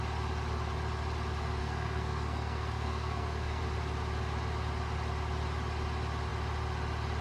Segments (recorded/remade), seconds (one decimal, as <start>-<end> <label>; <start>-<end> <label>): 0.0-1.6 recorded; 1.6-3.6 remade; 3.6-7.2 recorded